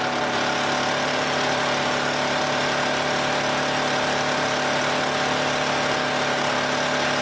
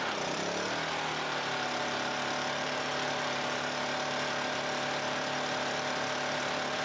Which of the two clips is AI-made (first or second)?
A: second